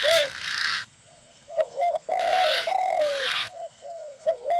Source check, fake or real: fake